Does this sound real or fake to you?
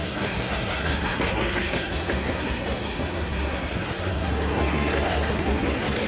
fake